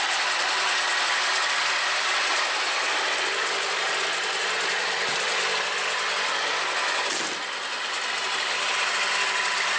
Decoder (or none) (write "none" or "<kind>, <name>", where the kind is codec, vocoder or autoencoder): none